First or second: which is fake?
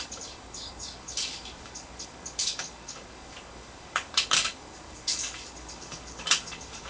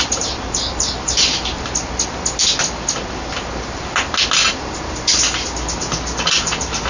first